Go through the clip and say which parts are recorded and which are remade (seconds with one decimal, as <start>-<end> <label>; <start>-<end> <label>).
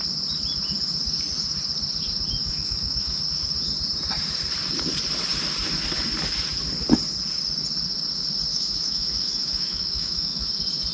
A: 0.0-2.4 recorded; 2.4-3.2 remade; 3.2-8.5 recorded; 8.5-10.5 remade; 10.5-10.9 recorded